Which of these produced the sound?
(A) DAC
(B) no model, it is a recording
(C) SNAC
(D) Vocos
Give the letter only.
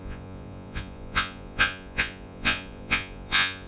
D